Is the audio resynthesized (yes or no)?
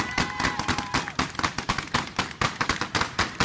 no